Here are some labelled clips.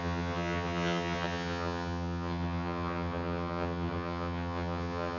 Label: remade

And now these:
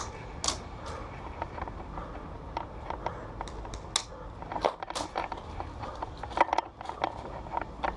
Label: recorded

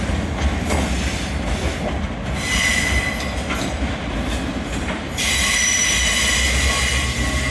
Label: recorded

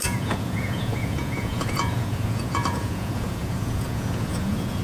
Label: remade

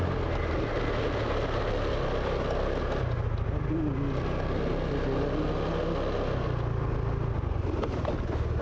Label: recorded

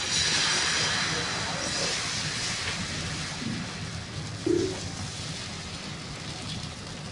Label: recorded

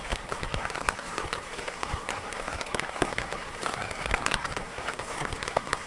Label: remade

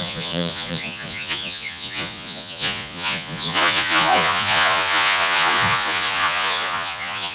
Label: remade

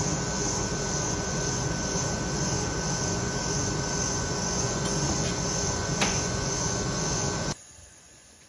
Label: remade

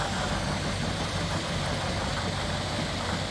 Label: recorded